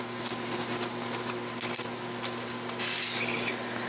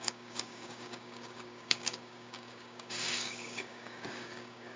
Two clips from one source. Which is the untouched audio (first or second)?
first